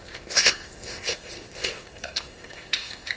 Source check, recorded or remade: remade